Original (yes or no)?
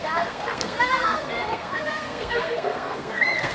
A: no